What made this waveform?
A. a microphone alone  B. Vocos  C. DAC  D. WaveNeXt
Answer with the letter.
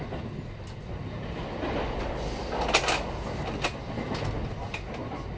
A